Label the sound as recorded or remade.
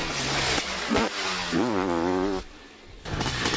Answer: recorded